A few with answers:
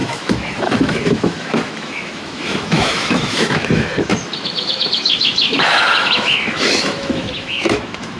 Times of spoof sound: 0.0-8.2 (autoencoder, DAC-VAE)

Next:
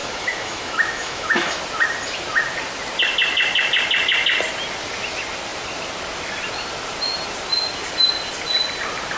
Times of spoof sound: 0.0-1.5 (autoencoder, DAC-VAE)

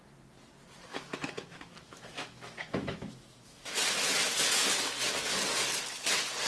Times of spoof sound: 0.9-3.8 (autoencoder, DAC-VAE)

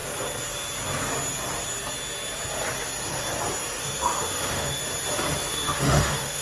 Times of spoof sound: 3.8-4.8 (autoencoder, DAC-VAE); 5.5-6.4

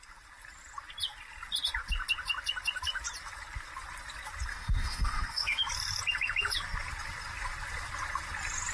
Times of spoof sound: 4.5-5.6 (autoencoder, DAC-VAE)

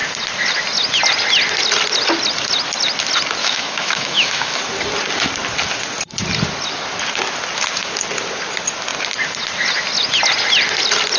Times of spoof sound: 3.4-4.6 (autoencoder, DAC-VAE)

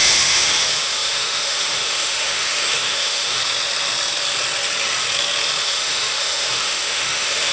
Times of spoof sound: 0.0-3.4 (autoencoder, DAC-VAE); 5.6-7.5